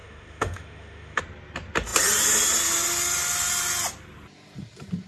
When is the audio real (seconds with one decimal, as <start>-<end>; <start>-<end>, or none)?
1.2-5.1